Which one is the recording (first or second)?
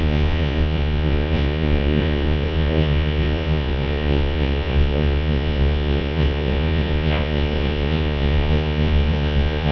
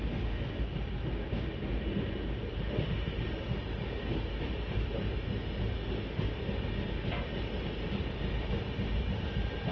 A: second